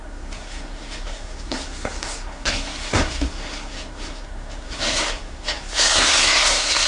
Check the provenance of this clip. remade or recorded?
remade